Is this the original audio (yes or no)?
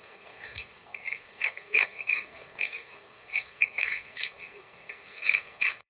no